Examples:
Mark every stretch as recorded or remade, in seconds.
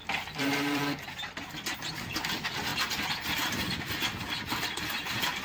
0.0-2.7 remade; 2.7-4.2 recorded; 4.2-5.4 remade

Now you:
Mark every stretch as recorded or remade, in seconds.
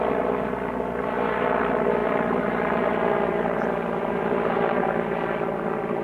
0.0-6.0 recorded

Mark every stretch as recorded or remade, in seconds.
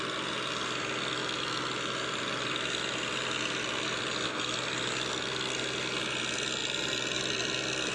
0.0-6.6 recorded; 6.6-7.4 remade; 7.4-7.9 recorded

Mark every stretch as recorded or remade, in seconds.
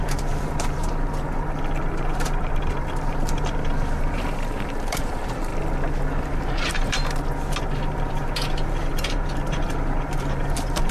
0.0-5.5 remade; 5.5-6.2 recorded; 6.2-7.0 remade; 7.0-7.6 recorded; 7.6-10.9 remade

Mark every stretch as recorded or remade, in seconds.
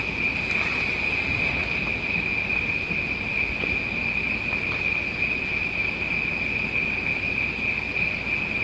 0.0-8.6 recorded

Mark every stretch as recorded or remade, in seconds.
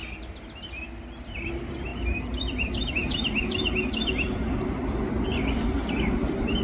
0.0-1.1 recorded; 1.1-6.6 remade